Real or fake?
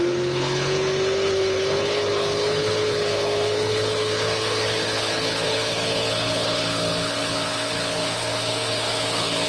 fake